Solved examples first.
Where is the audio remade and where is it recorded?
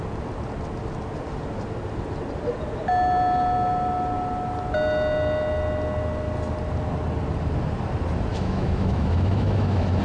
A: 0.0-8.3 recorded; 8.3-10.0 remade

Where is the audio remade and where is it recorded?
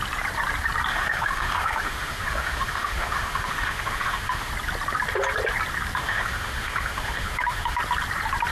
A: 0.0-0.9 recorded; 0.9-4.5 remade; 4.5-6.0 recorded; 6.0-7.8 remade; 7.8-8.5 recorded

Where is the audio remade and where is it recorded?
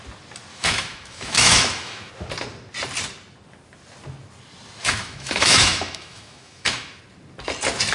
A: 0.0-0.5 recorded; 0.5-2.1 remade; 2.1-4.8 recorded; 4.8-7.0 remade; 7.0-7.9 recorded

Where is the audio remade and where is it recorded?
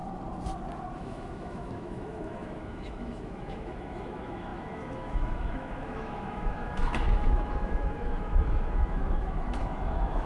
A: 0.0-1.0 recorded; 1.0-10.3 remade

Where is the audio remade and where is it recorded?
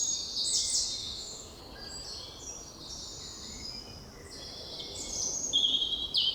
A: 0.0-1.0 recorded; 1.0-1.6 remade; 1.6-6.3 recorded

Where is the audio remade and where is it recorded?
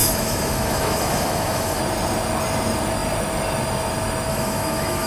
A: 0.0-1.8 remade; 1.8-4.3 recorded; 4.3-5.1 remade